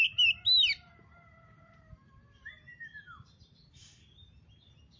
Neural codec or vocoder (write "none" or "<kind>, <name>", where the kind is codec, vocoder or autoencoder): none